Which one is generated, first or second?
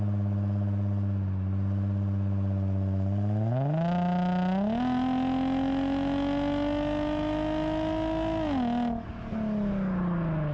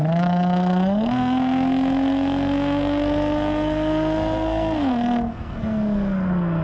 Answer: second